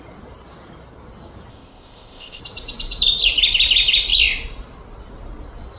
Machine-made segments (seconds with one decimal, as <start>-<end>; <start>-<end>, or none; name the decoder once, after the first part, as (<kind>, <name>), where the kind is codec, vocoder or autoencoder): 1.5-2.4 (codec, ZipCodec)